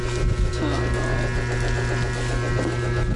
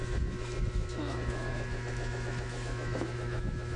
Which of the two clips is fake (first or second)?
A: second